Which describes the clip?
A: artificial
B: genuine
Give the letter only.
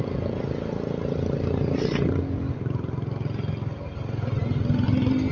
B